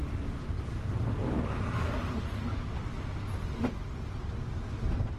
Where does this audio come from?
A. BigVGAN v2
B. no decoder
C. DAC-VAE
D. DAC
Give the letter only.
B